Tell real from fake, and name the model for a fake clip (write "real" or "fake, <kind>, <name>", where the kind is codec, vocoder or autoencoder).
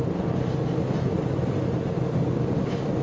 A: real